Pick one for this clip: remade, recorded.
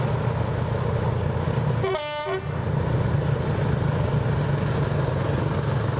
recorded